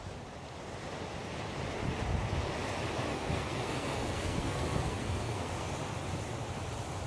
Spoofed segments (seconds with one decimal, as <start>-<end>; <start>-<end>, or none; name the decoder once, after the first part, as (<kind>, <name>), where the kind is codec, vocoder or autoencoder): 3.1-5.7 (codec, SNAC)